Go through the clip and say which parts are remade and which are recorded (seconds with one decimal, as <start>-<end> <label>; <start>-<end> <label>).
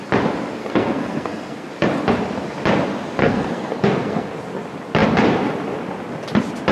0.0-0.6 recorded; 0.6-1.7 remade; 1.7-3.2 recorded; 3.2-4.3 remade; 4.3-6.7 recorded